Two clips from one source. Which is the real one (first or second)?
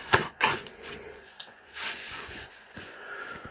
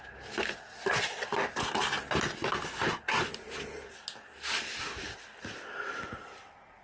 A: second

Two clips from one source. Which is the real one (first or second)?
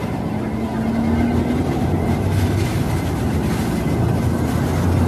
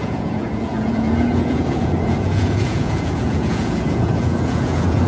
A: first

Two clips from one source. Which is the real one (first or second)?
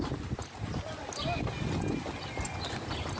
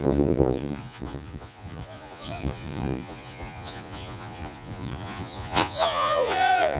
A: first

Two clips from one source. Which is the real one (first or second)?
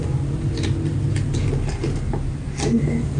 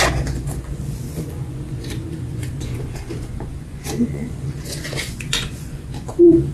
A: first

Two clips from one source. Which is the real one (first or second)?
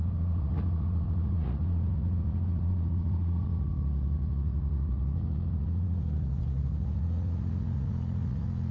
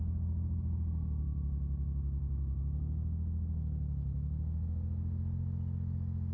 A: second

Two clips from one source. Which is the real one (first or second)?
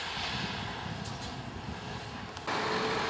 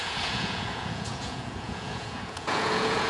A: first